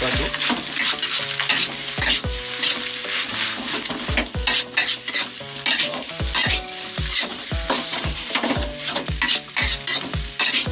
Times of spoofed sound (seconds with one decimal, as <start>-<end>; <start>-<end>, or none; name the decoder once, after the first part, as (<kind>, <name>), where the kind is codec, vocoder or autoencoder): 3.0-3.6 (vocoder, BigVGAN v2); 5.9-6.5; 7.3-8.3